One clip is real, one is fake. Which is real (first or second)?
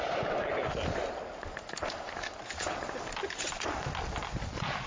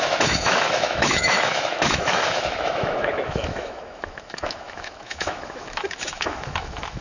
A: first